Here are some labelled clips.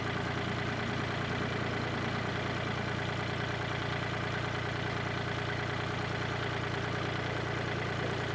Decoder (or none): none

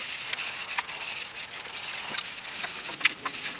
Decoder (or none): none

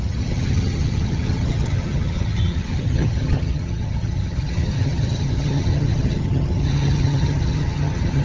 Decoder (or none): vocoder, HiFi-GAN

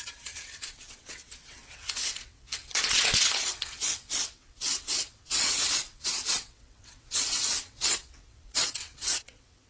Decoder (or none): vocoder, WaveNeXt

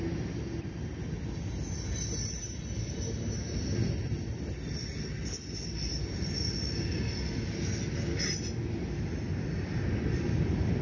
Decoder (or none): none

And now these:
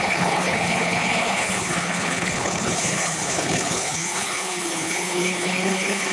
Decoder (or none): codec, HILCodec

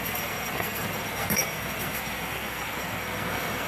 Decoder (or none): codec, SNAC